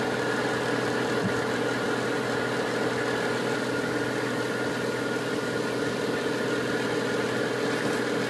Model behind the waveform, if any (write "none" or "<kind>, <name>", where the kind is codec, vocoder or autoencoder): none